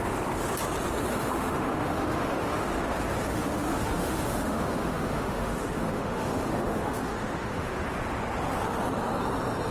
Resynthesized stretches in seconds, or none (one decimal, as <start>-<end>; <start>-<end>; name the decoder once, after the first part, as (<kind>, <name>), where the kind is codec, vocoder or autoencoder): 1.1-2.8 (autoencoder, DAC-VAE); 3.3-7.7